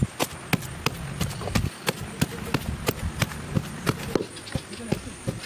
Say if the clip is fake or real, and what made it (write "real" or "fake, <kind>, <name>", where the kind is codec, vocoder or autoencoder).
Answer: real